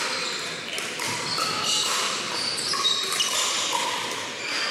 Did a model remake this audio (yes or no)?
no